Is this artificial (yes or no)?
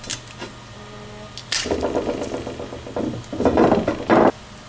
no